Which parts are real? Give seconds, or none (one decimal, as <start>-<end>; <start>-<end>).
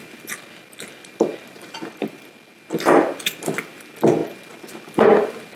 0.0-5.6